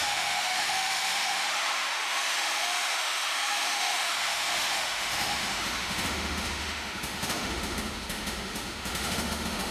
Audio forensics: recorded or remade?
remade